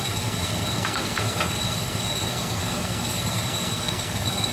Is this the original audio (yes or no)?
no